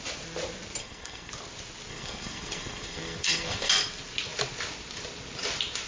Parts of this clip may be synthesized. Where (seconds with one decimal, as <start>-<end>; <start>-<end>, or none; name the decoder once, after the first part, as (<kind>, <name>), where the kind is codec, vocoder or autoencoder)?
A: 0.8-1.3 (codec, SNAC); 1.9-3.7